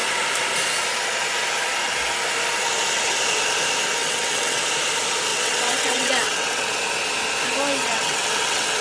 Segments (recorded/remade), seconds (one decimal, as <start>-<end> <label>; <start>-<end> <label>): 0.0-4.0 recorded; 4.0-4.6 remade; 4.6-5.3 recorded; 5.3-6.7 remade; 6.7-7.8 recorded; 7.8-8.8 remade